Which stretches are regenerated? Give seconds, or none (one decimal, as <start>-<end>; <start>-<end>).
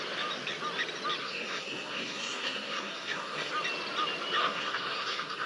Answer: 1.2-3.5; 4.4-5.5